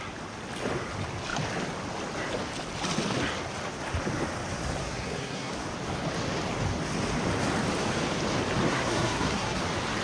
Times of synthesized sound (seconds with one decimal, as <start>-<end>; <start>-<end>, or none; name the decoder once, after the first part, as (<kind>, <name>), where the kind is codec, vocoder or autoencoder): 4.8-5.5 (codec, SNAC); 8.7-9.6